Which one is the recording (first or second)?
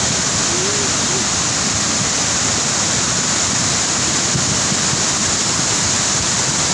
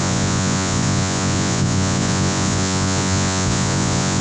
first